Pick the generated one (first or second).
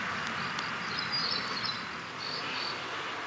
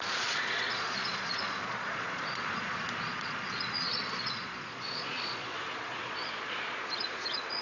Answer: second